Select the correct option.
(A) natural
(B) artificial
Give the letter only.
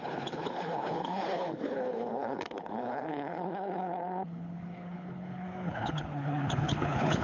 B